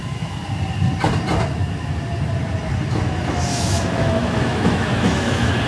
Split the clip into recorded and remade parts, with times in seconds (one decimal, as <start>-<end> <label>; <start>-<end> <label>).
0.0-0.4 remade; 0.4-2.9 recorded; 2.9-5.7 remade